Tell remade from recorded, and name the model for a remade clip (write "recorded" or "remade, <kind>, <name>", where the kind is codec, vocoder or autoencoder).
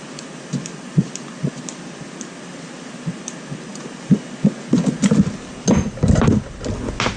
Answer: recorded